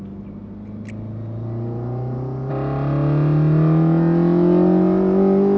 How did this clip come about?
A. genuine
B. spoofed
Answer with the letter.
A